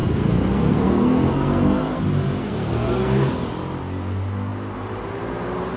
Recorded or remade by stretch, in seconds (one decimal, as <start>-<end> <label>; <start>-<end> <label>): 0.0-2.0 remade; 2.0-2.4 recorded; 2.4-3.3 remade; 3.3-5.8 recorded